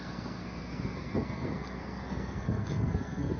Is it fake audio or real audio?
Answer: fake